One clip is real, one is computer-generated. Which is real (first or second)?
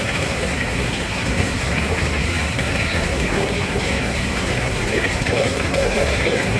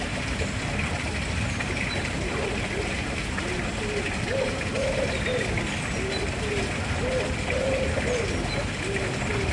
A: second